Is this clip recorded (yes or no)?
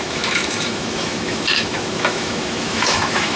no